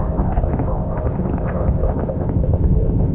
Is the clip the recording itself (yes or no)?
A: no